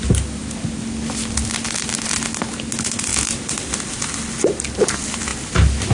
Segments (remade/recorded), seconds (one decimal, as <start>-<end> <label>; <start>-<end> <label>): 0.0-5.9 recorded